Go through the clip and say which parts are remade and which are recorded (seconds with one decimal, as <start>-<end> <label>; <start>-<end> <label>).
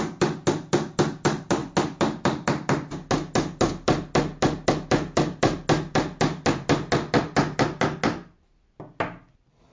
0.0-9.7 recorded